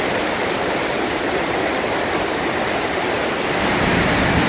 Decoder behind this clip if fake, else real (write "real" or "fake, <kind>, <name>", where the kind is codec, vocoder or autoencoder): real